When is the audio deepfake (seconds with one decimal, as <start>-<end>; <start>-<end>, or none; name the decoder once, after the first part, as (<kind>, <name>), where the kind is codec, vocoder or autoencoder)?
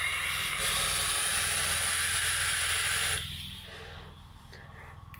0.0-5.2 (vocoder, BigVGAN v2)